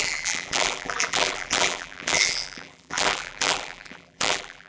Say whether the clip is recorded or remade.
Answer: remade